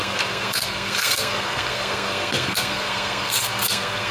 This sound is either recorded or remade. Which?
remade